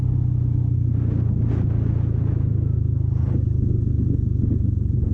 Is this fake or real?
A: real